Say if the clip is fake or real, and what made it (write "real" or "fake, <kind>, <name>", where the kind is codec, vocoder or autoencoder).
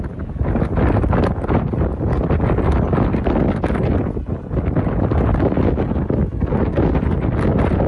real